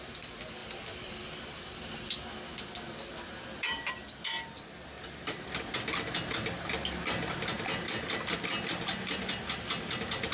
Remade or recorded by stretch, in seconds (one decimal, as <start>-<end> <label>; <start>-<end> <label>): 0.0-10.3 recorded